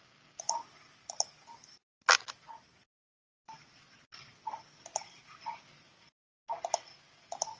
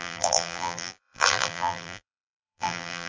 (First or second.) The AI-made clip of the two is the second